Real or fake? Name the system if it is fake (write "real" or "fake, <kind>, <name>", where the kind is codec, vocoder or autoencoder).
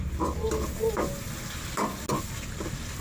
real